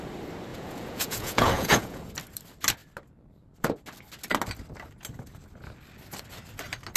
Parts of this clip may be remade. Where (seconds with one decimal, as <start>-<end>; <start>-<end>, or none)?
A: 0.5-2.1